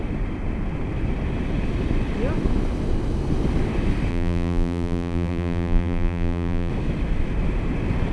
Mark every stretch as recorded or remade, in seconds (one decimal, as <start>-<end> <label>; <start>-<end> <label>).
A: 0.0-4.1 recorded; 4.1-6.7 remade; 6.7-8.1 recorded